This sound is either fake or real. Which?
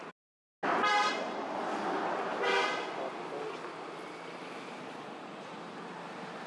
real